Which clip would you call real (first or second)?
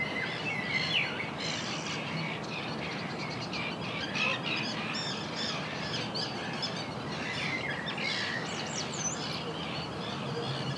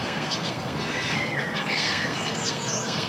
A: first